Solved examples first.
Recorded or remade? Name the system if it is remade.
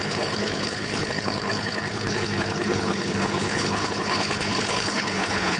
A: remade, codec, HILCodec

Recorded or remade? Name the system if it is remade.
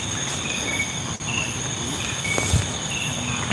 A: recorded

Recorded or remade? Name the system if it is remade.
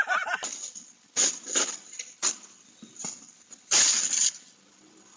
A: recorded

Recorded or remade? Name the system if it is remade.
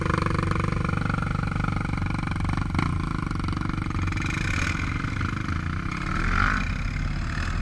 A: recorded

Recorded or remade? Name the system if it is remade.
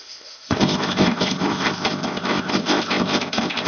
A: remade, codec, ZipCodec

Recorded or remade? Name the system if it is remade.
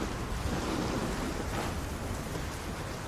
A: recorded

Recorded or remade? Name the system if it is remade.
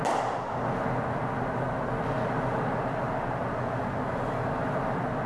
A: recorded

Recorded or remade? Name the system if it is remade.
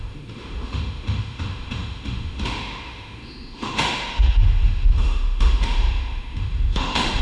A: remade, autoencoder, DAC-VAE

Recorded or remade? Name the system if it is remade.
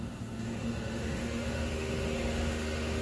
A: remade, autoencoder, DAC-VAE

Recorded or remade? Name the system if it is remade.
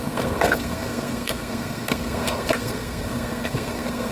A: remade, codec, SNAC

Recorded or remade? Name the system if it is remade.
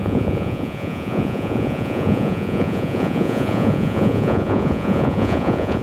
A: remade, vocoder, Vocos